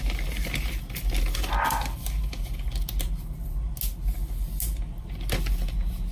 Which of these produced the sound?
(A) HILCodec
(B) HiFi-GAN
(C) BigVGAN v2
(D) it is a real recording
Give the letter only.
D